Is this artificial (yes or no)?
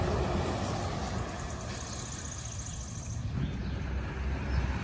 no